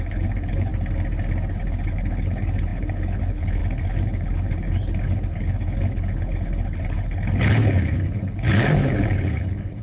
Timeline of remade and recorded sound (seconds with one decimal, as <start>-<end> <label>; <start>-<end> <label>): 0.0-0.7 remade; 0.7-1.5 recorded; 1.5-9.8 remade